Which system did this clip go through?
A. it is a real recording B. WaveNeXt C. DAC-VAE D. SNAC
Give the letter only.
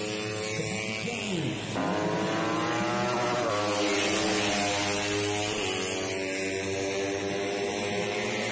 A